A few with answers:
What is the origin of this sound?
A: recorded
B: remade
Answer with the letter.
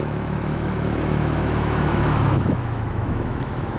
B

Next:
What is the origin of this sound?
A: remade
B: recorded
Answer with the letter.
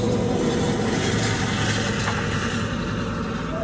B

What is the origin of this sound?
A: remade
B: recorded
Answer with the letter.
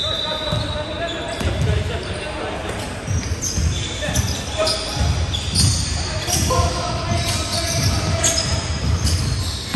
B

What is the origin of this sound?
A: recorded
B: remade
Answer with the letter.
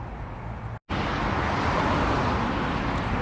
A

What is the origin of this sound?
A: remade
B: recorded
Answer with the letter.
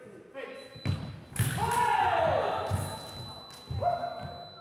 B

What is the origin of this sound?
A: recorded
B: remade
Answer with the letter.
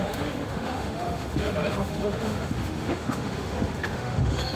B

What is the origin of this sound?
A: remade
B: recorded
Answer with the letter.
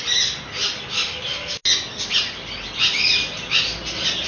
B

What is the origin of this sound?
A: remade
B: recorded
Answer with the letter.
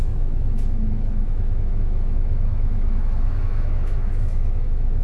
A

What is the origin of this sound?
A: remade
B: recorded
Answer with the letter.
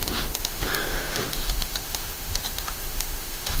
A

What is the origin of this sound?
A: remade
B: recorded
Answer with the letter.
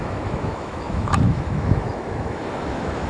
A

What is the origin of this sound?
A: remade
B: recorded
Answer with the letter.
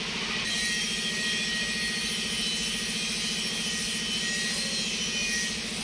B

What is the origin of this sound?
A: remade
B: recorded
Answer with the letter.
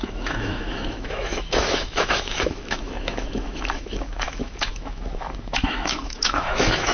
A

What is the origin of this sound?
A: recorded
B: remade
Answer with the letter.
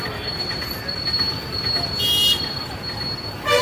A